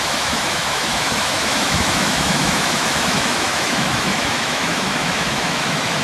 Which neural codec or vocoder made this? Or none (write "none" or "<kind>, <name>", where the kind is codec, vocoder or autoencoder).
autoencoder, DAC-VAE